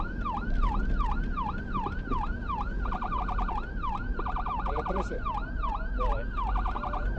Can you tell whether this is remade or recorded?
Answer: remade